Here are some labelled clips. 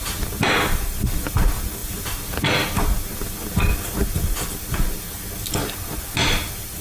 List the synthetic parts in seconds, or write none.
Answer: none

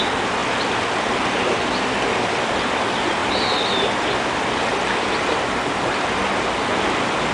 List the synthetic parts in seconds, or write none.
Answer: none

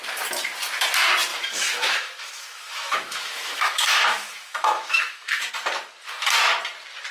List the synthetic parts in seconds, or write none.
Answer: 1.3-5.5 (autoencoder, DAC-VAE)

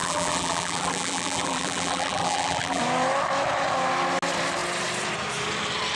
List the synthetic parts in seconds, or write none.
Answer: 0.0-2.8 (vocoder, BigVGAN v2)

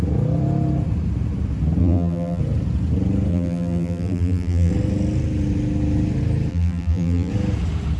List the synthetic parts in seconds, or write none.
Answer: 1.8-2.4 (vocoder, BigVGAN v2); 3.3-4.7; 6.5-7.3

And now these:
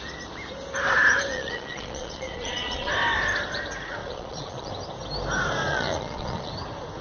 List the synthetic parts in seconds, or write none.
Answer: 1.3-2.9 (vocoder, Vocos); 4.0-4.7; 5.7-6.5